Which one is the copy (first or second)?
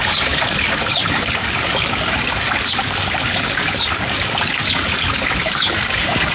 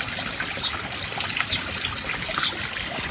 first